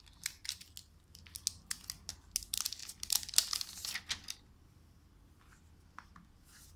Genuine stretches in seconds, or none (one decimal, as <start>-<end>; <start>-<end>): 0.0-6.8